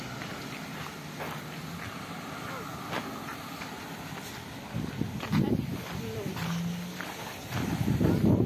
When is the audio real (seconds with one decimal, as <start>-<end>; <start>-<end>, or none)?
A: 0.0-8.5